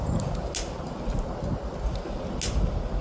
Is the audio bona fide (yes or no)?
yes